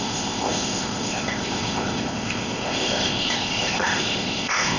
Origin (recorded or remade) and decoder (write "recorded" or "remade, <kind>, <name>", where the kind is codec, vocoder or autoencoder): remade, codec, ZipCodec